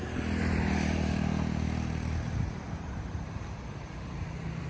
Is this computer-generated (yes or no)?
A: yes